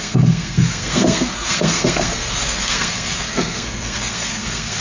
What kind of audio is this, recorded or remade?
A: remade